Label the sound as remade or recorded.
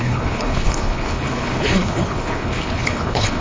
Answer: remade